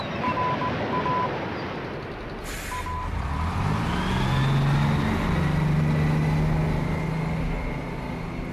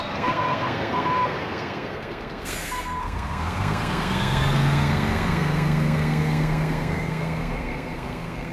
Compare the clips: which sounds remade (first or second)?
second